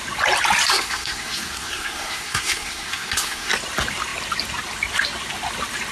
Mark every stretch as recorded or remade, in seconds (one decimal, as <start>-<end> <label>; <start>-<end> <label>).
0.0-0.7 recorded; 0.7-3.5 remade; 3.5-5.9 recorded